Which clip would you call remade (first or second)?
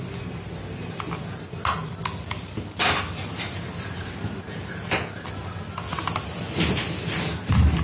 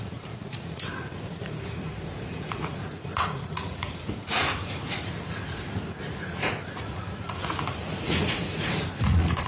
second